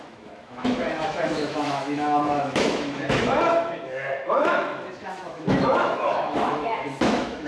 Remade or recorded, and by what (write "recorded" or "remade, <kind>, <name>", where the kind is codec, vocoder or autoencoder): remade, autoencoder, DAC-VAE